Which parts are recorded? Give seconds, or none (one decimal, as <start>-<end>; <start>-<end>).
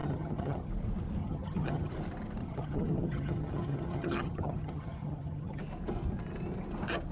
0.7-1.2; 1.9-2.4; 5.6-7.1